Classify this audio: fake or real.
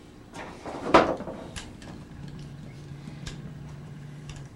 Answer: fake